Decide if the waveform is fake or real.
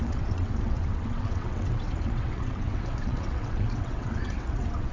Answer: fake